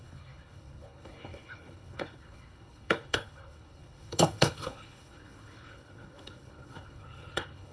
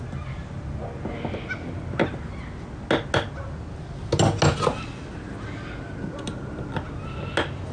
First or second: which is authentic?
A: second